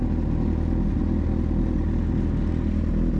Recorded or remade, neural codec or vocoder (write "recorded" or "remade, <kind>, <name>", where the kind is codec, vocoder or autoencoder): recorded